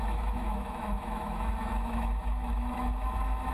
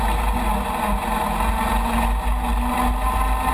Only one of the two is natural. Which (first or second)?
second